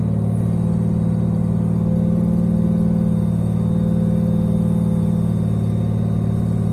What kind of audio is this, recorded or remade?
recorded